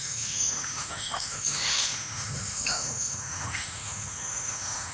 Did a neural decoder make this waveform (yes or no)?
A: yes